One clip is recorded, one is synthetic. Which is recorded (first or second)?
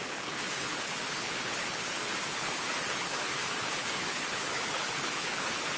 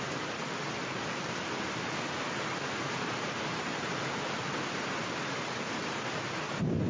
second